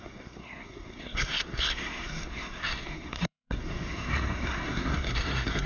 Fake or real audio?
fake